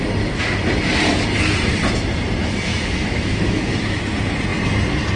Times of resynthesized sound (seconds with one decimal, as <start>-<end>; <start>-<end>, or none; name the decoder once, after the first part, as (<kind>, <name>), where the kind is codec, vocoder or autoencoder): 2.7-4.0 (autoencoder, DAC-VAE)